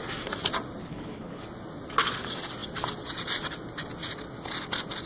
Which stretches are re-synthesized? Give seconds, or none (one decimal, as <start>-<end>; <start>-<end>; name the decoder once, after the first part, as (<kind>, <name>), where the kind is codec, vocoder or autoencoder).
0.8-1.4 (codec, HILCodec)